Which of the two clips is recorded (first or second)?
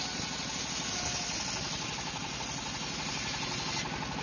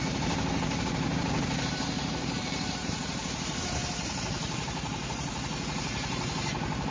first